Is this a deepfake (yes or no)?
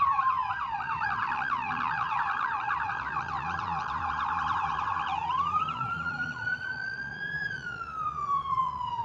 yes